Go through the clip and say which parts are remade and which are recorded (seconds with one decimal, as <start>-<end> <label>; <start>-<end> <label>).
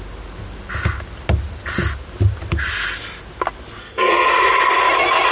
0.0-3.8 recorded; 3.8-4.3 remade; 4.3-5.3 recorded